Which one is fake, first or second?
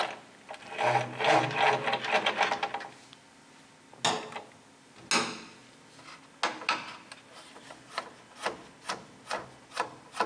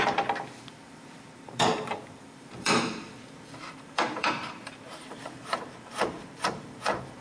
second